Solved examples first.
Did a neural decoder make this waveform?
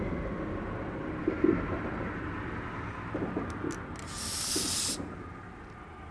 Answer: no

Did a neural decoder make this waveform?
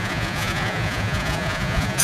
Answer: yes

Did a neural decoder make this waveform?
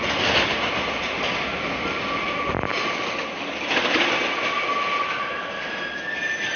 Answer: no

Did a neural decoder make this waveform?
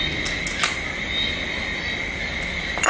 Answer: no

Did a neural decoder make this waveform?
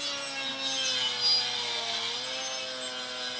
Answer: no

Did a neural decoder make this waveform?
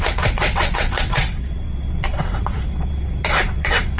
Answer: yes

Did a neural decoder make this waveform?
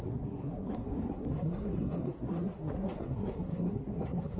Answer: yes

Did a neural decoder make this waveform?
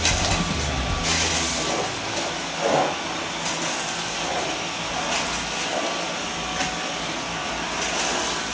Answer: no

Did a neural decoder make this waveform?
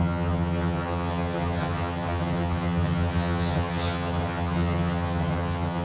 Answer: yes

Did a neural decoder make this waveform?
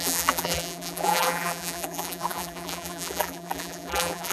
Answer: yes